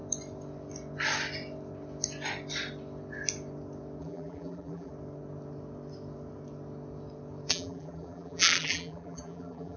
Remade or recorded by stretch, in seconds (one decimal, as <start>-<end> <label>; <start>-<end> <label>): 0.0-4.0 recorded; 4.0-4.9 remade; 4.9-7.5 recorded; 7.5-9.8 remade